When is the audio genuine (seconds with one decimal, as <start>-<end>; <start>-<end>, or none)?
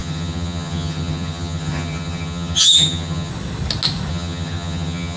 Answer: 3.3-4.1